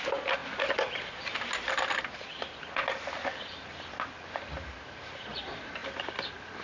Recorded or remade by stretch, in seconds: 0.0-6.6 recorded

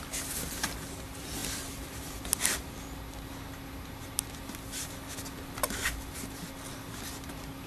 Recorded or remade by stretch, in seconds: 0.0-7.7 recorded

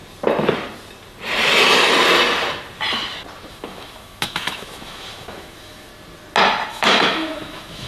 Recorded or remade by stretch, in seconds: 0.0-3.5 recorded; 3.5-5.9 remade; 5.9-6.7 recorded; 6.7-7.9 remade

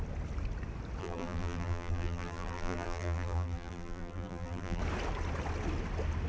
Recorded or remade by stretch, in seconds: 0.0-1.0 recorded; 1.0-4.8 remade; 4.8-6.3 recorded

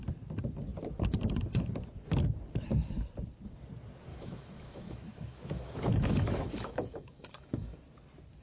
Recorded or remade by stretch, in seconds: 0.0-4.1 recorded; 4.1-7.8 remade; 7.8-8.4 recorded

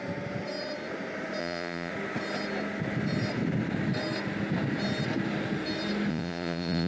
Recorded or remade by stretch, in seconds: 0.0-1.4 recorded; 1.4-1.9 remade; 1.9-6.1 recorded; 6.1-6.9 remade

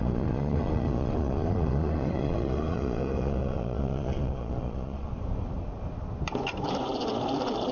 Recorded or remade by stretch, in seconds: 0.0-5.1 remade; 5.1-7.7 recorded

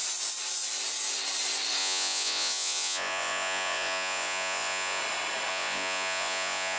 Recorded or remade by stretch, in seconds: 0.0-1.8 recorded; 1.8-5.0 remade; 5.0-5.5 recorded; 5.5-6.8 remade